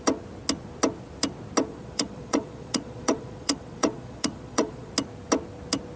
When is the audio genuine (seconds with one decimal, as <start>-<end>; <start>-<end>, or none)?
0.0-1.7; 4.9-6.0

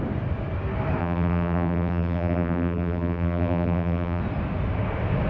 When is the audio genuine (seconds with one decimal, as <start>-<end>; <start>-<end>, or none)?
0.0-1.0; 4.2-5.3

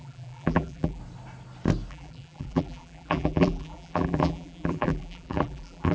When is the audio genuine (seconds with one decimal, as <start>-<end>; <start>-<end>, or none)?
1.0-1.9